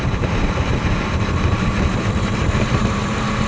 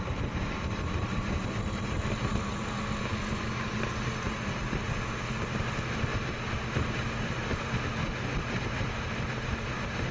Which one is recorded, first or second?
second